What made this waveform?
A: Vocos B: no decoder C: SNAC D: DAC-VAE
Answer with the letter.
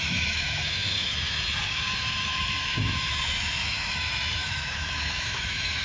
D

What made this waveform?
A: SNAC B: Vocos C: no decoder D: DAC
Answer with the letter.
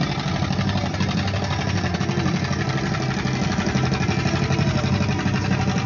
C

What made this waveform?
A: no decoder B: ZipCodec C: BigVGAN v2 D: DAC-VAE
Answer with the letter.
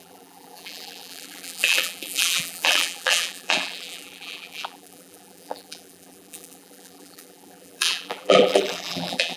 C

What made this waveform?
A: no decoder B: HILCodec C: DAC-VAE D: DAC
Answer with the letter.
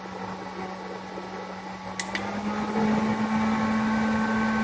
A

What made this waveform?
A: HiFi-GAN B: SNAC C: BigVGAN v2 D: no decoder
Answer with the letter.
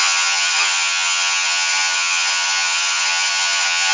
A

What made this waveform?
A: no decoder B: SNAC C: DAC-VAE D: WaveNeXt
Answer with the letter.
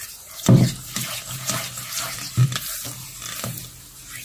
A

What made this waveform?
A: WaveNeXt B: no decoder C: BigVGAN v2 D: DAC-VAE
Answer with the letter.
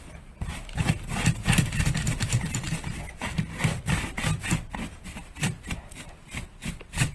B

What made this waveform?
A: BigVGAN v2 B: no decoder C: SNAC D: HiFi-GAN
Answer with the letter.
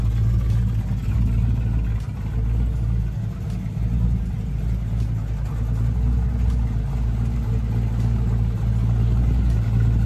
B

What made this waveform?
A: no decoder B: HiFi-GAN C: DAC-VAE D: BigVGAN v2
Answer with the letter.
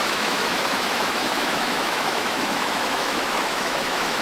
C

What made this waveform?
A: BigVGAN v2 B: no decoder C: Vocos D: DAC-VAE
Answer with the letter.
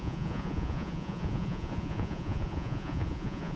C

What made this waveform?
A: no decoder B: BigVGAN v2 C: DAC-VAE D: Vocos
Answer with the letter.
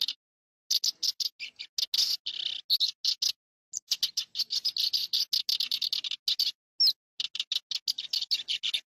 A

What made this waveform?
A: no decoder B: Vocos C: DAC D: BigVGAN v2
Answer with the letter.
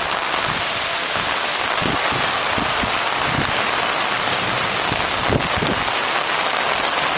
A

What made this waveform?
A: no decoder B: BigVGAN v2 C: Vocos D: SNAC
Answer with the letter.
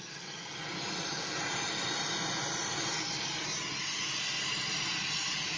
A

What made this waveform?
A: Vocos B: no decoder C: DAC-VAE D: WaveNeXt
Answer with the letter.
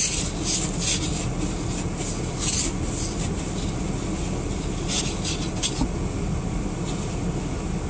B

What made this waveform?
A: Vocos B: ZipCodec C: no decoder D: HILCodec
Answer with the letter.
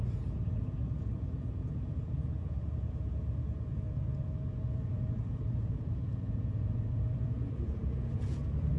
A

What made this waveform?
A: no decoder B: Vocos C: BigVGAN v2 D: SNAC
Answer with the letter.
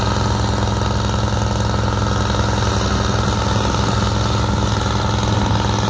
A